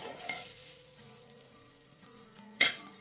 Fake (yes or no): yes